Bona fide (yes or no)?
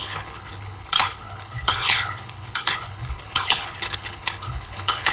no